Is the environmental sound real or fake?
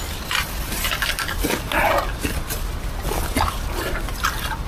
real